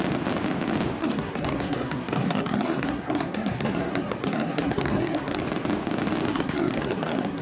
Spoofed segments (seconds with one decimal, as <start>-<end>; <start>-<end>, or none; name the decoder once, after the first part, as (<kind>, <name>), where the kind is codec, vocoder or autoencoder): 1.0-5.4 (codec, SNAC); 6.3-7.4